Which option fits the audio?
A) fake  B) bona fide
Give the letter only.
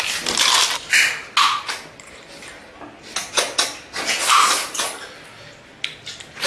B